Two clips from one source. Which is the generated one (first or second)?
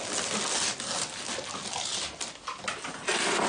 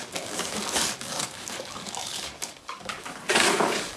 second